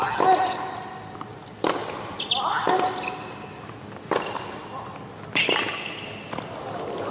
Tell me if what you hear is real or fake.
real